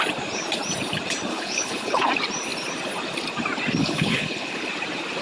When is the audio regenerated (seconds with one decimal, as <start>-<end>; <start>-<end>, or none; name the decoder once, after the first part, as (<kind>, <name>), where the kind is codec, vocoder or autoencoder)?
1.3-2.1 (codec, HILCodec); 3.8-4.7